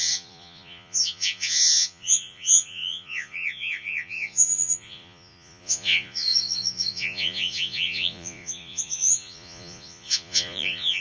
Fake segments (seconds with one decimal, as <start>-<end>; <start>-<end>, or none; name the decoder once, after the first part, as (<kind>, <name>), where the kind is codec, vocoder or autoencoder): 0.0-11.0 (vocoder, Vocos)